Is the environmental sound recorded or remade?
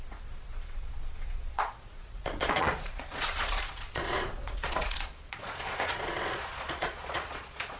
remade